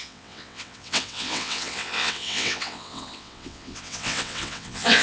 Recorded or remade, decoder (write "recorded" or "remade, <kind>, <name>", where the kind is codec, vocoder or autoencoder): remade, vocoder, WaveNeXt